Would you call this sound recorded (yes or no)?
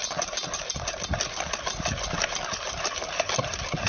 yes